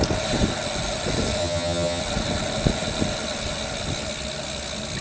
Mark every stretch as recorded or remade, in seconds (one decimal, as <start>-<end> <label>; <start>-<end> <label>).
0.0-1.4 recorded; 1.4-2.0 remade; 2.0-5.0 recorded